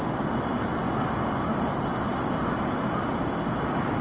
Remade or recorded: recorded